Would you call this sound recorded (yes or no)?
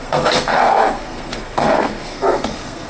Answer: no